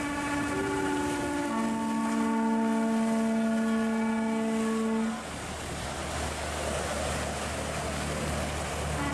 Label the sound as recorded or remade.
recorded